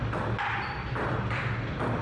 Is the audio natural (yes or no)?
yes